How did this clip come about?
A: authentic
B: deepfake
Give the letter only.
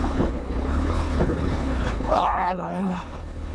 B